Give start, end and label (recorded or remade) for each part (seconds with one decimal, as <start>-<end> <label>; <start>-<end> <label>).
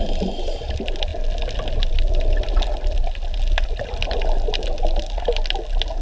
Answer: 0.0-6.0 recorded